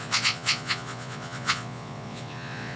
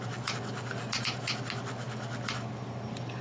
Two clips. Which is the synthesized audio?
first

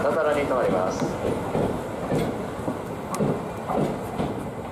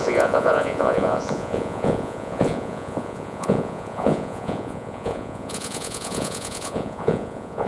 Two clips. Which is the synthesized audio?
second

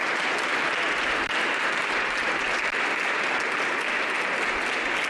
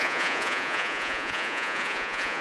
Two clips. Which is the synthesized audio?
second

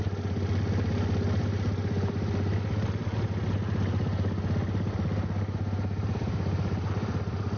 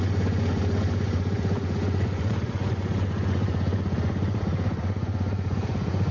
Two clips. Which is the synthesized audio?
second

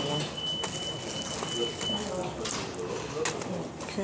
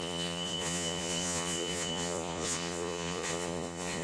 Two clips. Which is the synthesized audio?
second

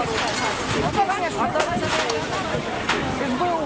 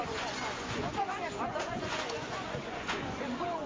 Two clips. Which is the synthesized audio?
second